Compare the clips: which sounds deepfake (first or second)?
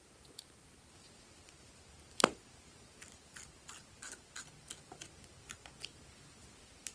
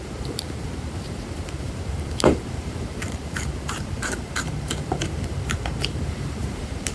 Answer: second